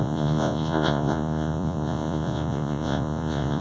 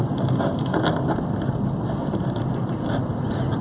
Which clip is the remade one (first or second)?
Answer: first